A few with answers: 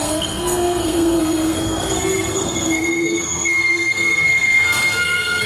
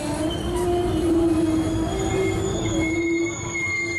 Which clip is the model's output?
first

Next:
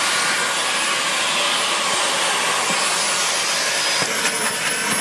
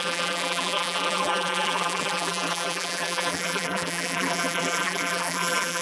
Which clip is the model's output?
second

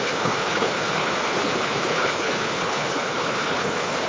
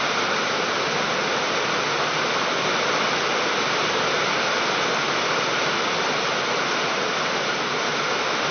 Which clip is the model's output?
first